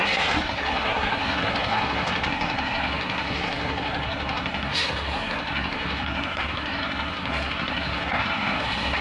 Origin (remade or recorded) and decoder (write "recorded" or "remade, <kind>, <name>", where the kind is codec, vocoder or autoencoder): remade, codec, SNAC